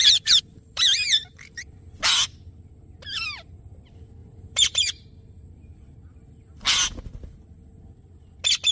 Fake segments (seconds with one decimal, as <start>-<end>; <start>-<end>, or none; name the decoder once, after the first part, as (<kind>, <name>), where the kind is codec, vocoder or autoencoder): 0.0-1.8 (vocoder, BigVGAN v2); 4.2-4.8